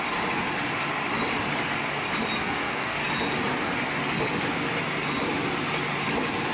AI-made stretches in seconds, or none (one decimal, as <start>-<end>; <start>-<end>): 2.4-3.0